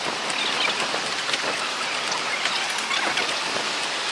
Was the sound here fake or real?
real